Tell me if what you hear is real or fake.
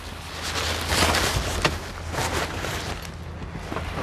real